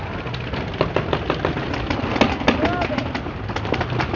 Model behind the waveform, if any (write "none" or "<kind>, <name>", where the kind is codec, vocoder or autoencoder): none